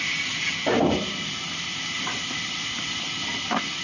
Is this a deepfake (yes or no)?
no